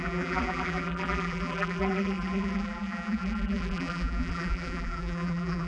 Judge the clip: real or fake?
fake